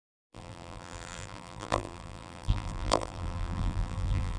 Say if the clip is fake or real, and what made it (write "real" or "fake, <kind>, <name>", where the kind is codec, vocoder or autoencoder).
fake, vocoder, BigVGAN v2